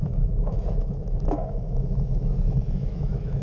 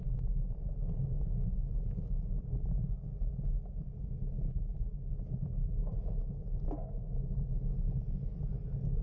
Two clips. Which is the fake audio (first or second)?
first